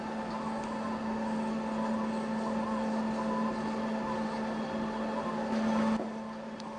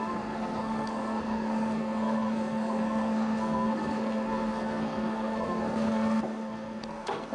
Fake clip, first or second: second